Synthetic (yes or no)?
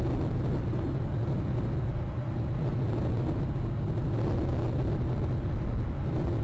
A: no